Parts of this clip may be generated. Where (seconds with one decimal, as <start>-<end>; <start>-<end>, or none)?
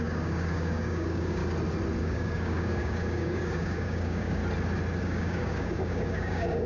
0.0-1.4; 2.0-4.4; 5.0-6.7